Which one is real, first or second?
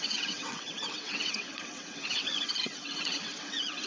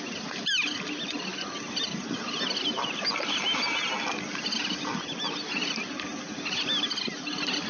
second